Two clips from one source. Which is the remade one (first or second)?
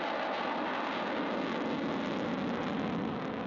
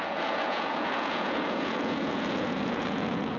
second